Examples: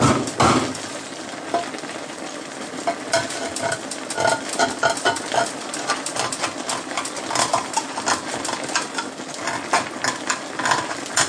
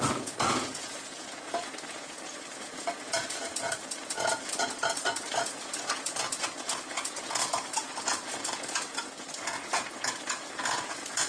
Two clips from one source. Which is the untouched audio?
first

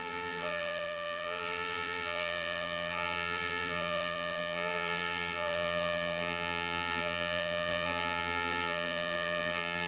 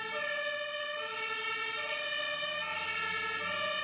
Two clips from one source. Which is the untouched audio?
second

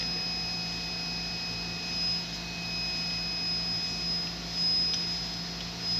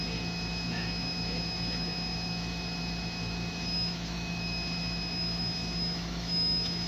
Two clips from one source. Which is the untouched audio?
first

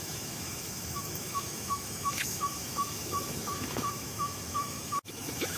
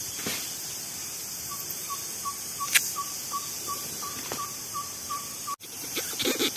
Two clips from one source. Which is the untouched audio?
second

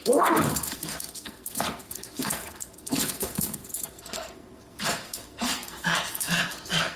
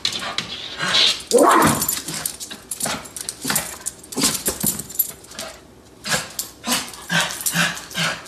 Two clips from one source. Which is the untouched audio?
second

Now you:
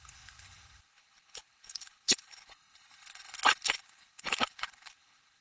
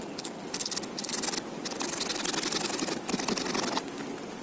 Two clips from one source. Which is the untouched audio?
second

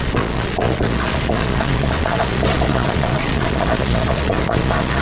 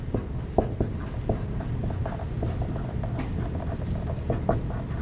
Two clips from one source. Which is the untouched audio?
second